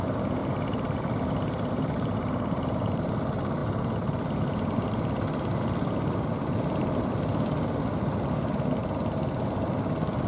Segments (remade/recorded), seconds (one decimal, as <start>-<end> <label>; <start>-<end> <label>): 0.0-0.4 recorded; 0.4-3.1 remade; 3.1-10.3 recorded